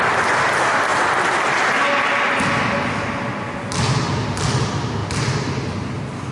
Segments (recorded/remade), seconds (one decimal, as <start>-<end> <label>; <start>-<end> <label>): 0.0-5.0 recorded; 5.0-6.3 remade